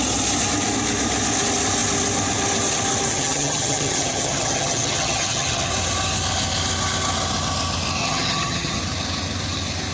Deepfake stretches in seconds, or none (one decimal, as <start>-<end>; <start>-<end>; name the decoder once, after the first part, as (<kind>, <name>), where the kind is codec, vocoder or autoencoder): 3.1-5.7 (vocoder, HiFi-GAN); 8.0-8.8